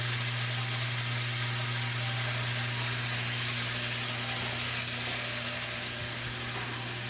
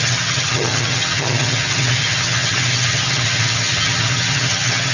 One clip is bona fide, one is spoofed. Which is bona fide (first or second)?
first